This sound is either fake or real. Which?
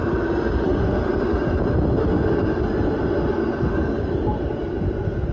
real